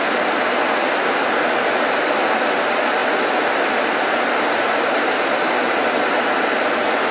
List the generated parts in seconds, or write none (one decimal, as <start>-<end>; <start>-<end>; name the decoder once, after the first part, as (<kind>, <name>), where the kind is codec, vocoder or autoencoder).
none